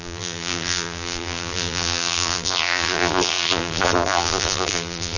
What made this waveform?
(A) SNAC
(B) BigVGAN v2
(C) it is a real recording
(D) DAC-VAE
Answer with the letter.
B